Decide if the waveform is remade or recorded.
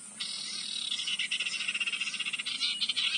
recorded